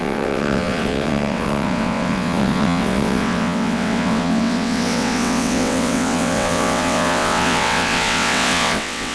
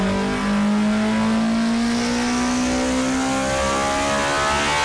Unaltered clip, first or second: second